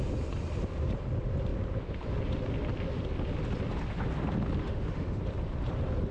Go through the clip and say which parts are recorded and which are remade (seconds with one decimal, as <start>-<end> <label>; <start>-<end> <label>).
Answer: 0.0-4.6 recorded; 4.6-5.2 remade; 5.2-6.1 recorded